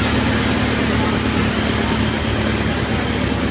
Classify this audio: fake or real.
real